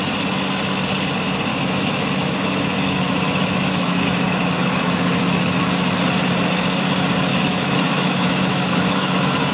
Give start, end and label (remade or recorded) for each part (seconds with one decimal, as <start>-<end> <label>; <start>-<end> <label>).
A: 0.0-1.5 recorded; 1.5-5.7 remade; 5.7-7.3 recorded; 7.3-9.5 remade